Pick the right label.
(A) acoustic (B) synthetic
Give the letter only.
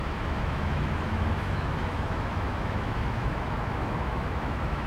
B